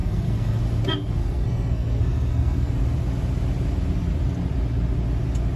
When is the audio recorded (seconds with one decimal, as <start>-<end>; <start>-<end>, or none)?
0.6-1.2; 2.7-5.6